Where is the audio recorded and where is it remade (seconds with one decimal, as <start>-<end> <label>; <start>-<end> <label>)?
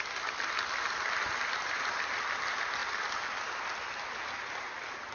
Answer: 0.0-5.1 recorded